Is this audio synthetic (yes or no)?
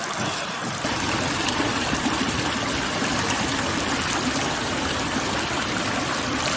yes